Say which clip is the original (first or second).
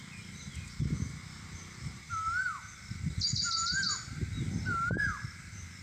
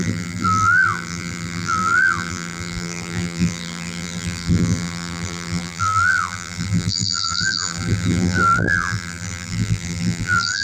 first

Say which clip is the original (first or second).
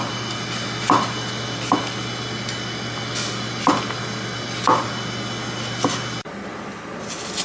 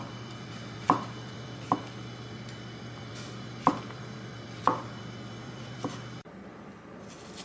first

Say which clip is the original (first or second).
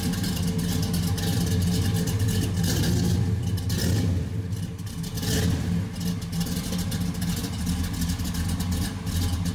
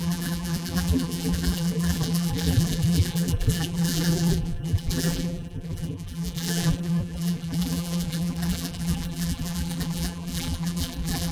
first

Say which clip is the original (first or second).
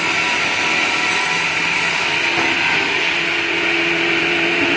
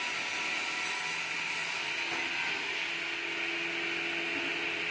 second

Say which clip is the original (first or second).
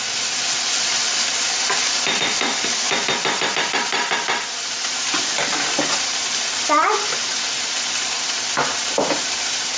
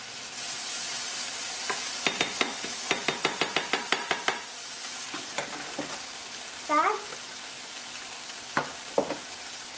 second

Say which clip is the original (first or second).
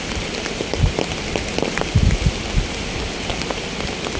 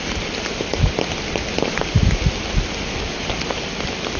first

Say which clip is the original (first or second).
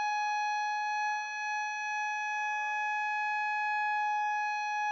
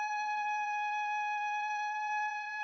first